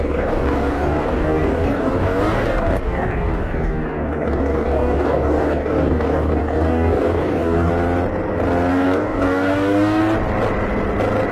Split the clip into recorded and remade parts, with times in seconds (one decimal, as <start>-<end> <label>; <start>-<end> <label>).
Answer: 0.0-7.7 remade; 7.7-8.7 recorded; 8.7-10.0 remade; 10.0-11.3 recorded